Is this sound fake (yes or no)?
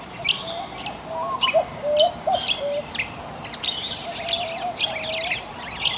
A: no